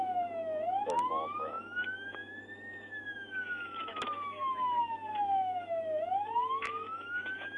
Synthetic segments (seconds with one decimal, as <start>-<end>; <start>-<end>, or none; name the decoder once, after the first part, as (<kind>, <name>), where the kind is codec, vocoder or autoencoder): 0.0-7.6 (autoencoder, DAC-VAE)